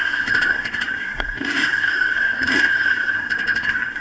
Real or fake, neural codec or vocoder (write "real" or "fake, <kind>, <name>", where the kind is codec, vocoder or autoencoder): fake, codec, SNAC